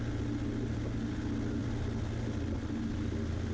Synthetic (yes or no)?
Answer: no